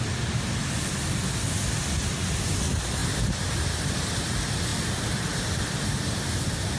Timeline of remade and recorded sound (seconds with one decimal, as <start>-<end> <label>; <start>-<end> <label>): 0.0-6.8 recorded